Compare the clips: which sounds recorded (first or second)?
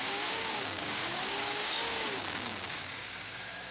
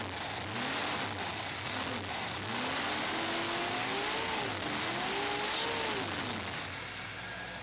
second